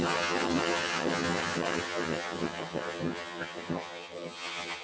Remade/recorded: remade